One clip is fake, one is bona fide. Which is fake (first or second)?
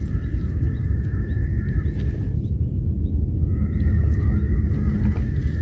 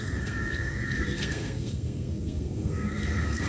second